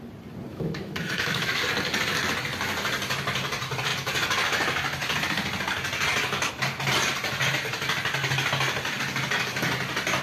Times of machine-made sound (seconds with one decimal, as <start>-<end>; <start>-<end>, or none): 0.5-1.6